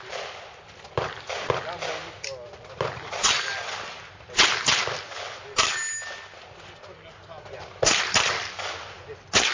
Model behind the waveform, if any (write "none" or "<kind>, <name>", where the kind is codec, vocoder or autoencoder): none